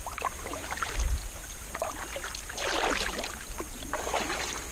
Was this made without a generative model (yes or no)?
yes